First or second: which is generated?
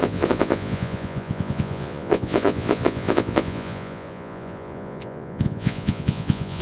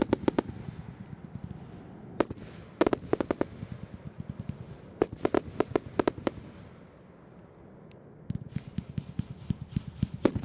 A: first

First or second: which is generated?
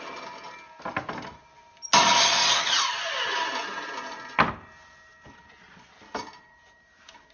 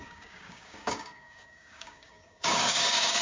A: second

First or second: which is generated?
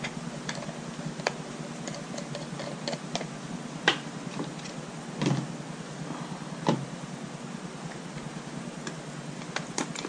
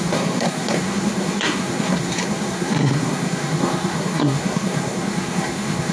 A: second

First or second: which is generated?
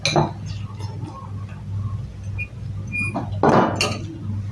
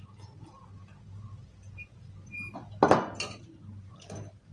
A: second